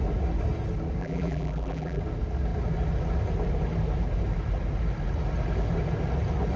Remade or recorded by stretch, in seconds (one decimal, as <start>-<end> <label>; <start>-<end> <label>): 0.0-1.0 recorded; 1.0-2.0 remade; 2.0-6.6 recorded